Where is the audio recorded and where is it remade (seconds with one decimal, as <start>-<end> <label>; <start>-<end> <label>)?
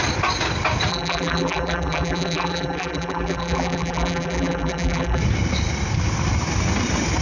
0.0-0.9 recorded; 0.9-5.2 remade; 5.2-7.2 recorded